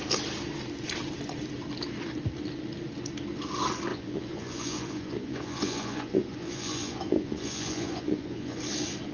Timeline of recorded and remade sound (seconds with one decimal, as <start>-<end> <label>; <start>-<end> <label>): 0.0-3.9 recorded; 3.9-8.6 remade; 8.6-9.1 recorded